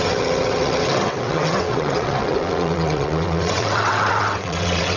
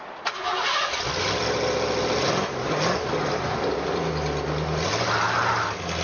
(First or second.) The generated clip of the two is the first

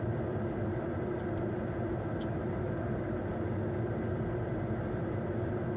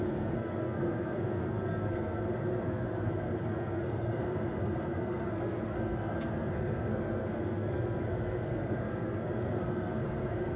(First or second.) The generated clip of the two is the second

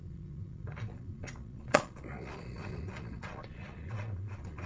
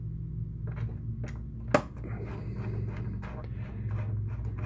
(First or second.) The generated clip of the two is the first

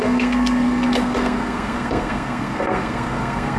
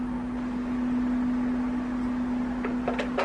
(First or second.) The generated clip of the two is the first